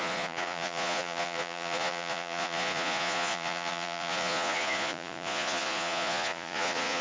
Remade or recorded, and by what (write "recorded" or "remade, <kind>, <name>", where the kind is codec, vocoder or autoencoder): remade, vocoder, Vocos